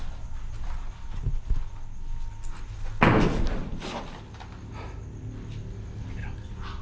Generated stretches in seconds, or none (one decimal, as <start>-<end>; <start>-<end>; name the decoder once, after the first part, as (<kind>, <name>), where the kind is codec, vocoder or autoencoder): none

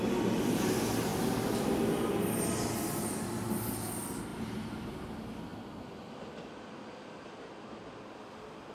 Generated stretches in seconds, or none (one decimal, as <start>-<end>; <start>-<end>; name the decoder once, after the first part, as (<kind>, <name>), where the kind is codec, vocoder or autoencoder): none

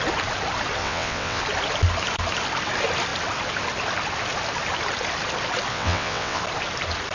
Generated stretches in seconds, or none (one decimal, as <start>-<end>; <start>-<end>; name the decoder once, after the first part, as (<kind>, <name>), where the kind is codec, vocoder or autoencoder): 0.8-1.4 (vocoder, WaveNeXt); 5.7-6.4